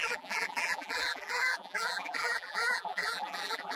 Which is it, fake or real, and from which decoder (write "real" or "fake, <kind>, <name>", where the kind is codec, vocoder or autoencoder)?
fake, vocoder, BigVGAN v2